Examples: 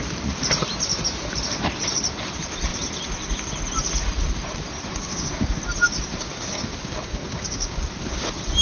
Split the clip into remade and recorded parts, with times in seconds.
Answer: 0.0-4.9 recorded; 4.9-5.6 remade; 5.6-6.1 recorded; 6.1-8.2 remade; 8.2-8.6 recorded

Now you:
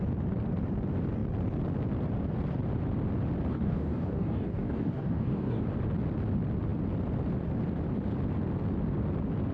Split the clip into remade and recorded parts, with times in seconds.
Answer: 0.0-3.5 recorded; 3.5-5.6 remade; 5.6-9.5 recorded

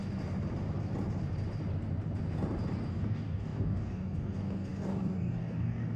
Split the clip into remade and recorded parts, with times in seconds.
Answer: 0.0-2.9 recorded; 2.9-6.0 remade

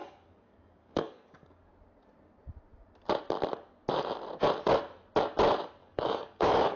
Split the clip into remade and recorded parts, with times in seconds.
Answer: 0.0-1.7 remade; 1.7-5.8 recorded; 5.8-6.8 remade